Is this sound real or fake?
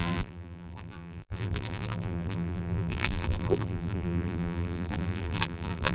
fake